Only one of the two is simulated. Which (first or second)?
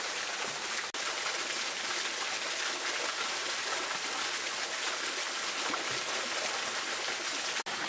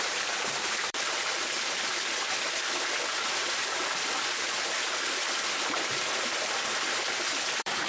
second